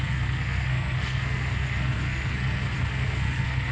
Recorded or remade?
remade